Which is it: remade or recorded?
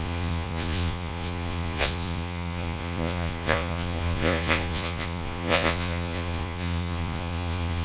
remade